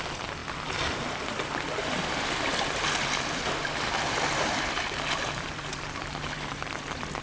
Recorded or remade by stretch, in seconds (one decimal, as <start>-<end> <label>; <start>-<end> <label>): 0.0-7.2 recorded